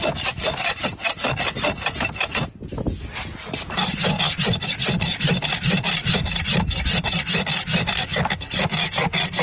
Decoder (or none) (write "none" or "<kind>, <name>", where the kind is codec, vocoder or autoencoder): none